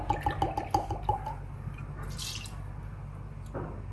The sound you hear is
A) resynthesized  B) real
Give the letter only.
B